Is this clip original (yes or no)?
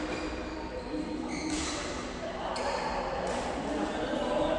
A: yes